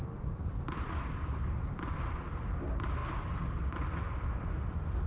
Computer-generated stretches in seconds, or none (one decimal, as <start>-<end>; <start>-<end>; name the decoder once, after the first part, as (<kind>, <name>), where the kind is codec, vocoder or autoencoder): 4.4-5.1 (autoencoder, DAC-VAE)